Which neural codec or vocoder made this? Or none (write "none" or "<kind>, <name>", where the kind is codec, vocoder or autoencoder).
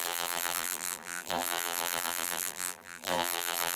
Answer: vocoder, BigVGAN v2